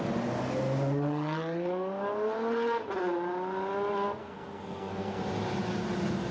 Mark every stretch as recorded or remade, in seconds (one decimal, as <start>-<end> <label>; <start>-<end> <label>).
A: 0.0-4.2 recorded; 4.2-5.2 remade; 5.2-6.3 recorded